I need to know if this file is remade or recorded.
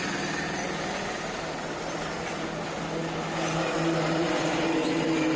recorded